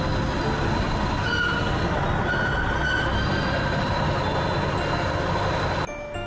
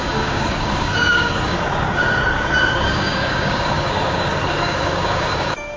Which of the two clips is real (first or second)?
first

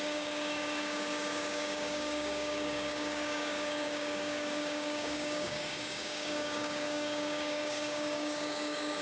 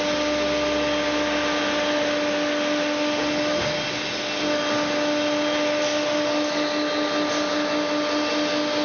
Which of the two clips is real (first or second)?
second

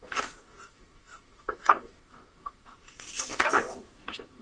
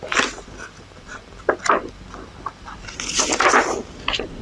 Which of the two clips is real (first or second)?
second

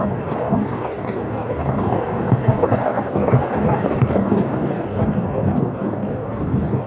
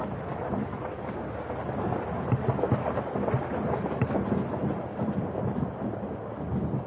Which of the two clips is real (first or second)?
second